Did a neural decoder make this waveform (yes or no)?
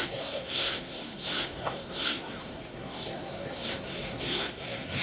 yes